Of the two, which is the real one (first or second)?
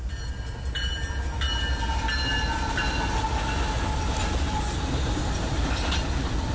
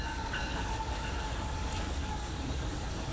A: first